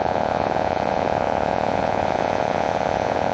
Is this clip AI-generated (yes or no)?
yes